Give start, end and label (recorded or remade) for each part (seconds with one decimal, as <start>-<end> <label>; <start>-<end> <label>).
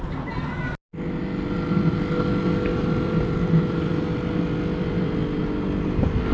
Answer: 0.0-2.8 recorded; 2.8-5.4 remade; 5.4-6.3 recorded